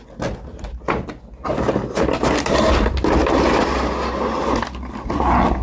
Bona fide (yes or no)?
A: yes